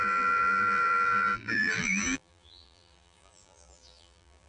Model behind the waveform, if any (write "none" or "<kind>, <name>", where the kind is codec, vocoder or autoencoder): vocoder, BigVGAN v2